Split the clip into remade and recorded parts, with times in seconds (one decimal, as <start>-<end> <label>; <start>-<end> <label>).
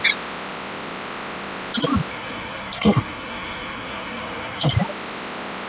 0.0-2.1 recorded; 2.1-4.7 remade; 4.7-5.7 recorded